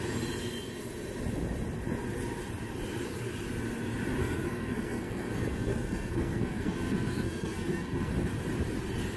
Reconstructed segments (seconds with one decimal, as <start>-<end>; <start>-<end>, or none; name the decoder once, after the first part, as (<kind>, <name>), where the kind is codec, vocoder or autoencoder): 4.2-8.1 (codec, SNAC)

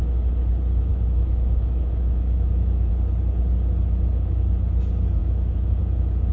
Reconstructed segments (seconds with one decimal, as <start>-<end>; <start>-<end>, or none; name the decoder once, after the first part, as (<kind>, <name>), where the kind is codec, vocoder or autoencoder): 0.9-2.9 (autoencoder, DAC-VAE); 5.2-5.8

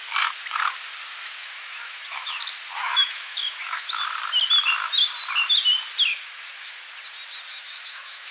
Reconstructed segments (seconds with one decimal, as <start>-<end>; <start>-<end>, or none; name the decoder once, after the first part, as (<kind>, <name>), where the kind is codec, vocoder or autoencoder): 1.4-2.4 (autoencoder, DAC-VAE); 2.8-4.0; 6.1-6.8; 7.5-8.3

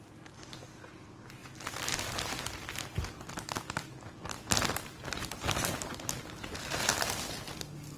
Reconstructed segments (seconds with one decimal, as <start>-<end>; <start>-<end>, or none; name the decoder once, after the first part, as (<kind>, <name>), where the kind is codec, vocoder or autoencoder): none